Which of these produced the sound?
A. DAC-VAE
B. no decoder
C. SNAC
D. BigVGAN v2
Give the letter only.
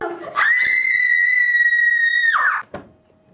B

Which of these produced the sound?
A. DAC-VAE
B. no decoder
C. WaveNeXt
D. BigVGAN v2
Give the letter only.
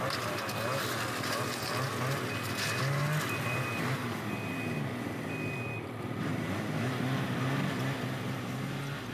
B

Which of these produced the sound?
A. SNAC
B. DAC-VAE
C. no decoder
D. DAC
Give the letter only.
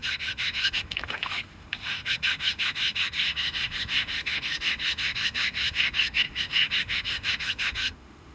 B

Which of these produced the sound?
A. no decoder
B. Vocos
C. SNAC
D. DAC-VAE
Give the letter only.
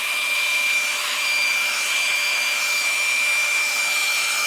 D